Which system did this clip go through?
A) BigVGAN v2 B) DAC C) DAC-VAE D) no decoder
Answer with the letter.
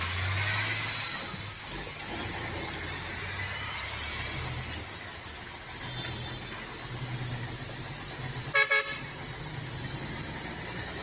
D